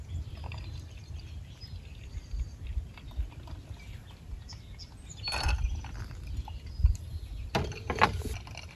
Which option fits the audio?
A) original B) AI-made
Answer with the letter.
A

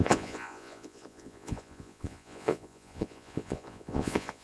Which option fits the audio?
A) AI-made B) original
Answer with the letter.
A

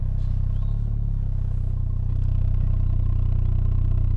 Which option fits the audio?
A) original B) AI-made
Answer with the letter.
A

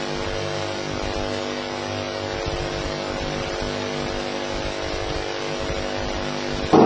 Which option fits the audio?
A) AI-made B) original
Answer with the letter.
B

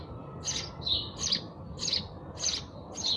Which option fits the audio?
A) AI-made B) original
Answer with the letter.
B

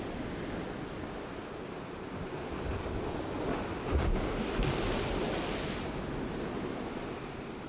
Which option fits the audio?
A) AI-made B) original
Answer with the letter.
B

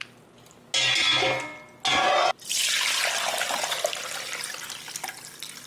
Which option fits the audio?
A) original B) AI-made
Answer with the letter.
A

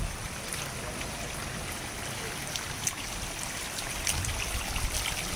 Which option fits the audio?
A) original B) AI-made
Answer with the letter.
A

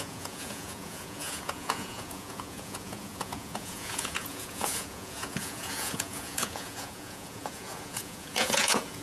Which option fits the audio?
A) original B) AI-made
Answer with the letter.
B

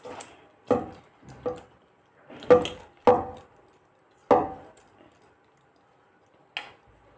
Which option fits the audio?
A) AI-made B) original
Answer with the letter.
B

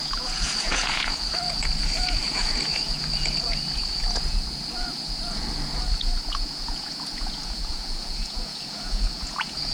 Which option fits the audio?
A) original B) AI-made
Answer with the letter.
B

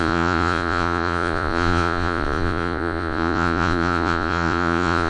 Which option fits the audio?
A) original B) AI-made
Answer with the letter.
B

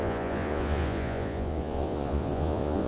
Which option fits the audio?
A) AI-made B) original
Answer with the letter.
A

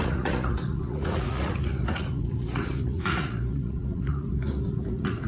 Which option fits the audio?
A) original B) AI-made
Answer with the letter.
B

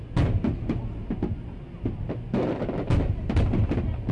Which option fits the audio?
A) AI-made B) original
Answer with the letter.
B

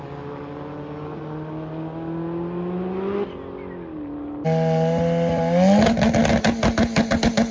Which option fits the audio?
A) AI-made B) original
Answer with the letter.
B